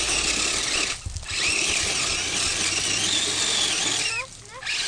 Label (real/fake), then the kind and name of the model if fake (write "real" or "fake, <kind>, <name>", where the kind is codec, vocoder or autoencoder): real